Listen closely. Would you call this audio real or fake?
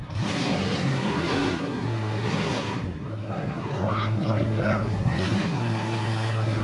fake